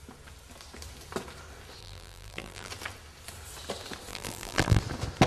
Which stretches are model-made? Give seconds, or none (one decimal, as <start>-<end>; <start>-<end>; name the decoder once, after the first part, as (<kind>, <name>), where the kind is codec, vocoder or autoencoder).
1.8-2.7 (vocoder, BigVGAN v2); 4.1-4.8